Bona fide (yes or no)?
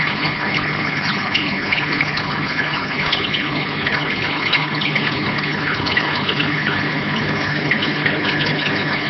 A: no